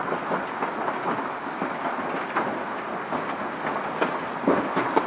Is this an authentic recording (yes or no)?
yes